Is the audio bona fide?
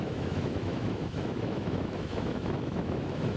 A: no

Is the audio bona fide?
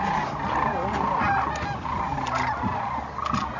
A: yes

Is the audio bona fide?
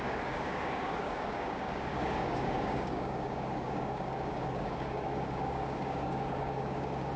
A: no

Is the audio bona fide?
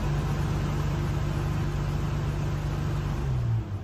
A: yes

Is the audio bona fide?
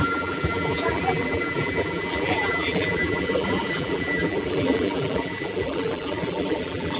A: no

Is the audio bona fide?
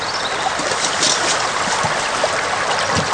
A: yes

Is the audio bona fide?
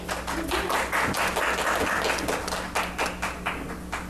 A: yes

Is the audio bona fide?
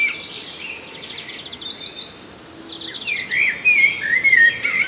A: yes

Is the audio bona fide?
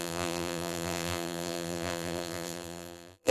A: no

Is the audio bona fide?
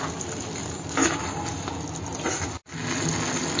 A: yes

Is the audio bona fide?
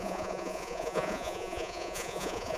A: no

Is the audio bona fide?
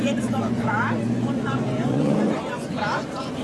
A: no